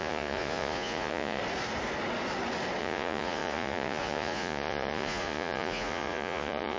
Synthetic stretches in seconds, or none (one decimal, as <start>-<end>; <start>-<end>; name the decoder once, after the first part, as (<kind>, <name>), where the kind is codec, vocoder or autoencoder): 0.0-1.4 (vocoder, Vocos); 2.8-6.8